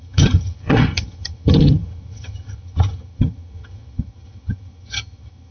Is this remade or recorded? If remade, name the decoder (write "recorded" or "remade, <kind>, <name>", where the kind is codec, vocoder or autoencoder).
remade, vocoder, HiFi-GAN